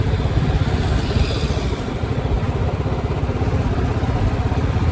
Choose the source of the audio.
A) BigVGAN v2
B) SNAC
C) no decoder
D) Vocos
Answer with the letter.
C